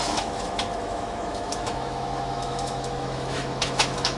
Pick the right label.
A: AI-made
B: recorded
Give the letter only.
A